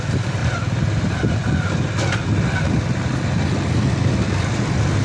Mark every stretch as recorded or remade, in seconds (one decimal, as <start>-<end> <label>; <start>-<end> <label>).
0.0-5.0 recorded